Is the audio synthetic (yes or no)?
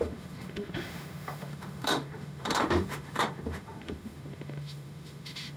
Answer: yes